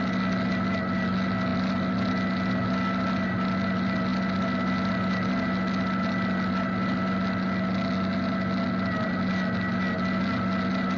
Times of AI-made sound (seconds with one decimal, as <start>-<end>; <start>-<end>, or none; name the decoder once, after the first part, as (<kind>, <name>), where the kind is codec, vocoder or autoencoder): none